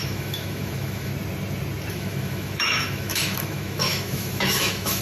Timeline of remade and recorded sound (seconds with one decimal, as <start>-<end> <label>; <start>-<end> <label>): 0.0-1.1 remade; 1.1-1.9 recorded; 1.9-5.0 remade